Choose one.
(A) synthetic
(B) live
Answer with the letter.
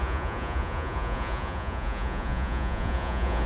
A